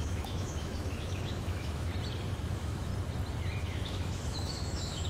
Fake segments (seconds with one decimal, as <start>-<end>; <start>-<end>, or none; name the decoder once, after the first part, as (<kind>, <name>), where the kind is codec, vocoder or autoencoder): 0.0-1.9 (autoencoder, DAC-VAE); 2.5-2.9; 3.6-5.1

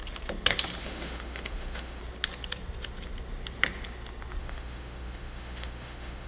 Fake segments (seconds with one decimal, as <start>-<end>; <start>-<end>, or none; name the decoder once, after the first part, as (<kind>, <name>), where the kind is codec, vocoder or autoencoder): 0.8-2.0 (autoencoder, DAC-VAE); 4.4-6.3

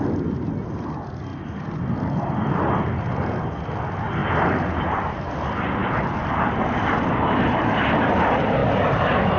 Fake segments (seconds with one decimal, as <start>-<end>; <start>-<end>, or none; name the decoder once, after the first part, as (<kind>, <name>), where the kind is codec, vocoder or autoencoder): 1.3-1.8 (vocoder, BigVGAN v2); 4.2-5.2; 5.8-7.8

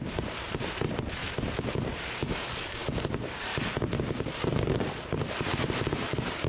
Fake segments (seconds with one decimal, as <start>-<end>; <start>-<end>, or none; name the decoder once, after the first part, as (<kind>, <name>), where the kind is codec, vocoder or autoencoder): 0.0-1.2 (vocoder, BigVGAN v2); 1.7-3.5; 4.3-6.5